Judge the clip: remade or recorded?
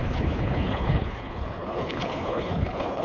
remade